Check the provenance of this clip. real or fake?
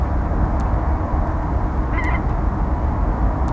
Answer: real